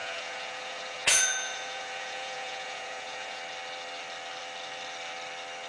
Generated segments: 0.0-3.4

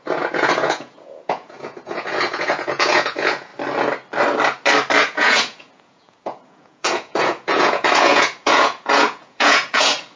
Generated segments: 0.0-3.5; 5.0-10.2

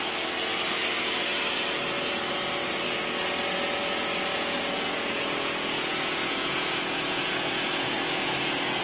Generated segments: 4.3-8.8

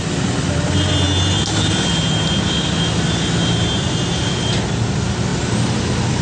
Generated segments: none